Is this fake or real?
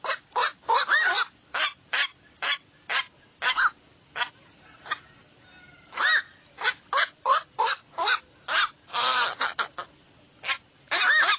real